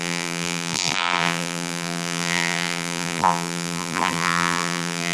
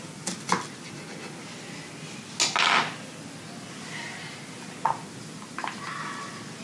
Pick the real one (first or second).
second